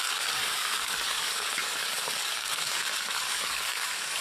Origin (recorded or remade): remade